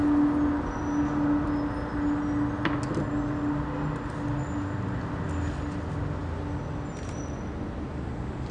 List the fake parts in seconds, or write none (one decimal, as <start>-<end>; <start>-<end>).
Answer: none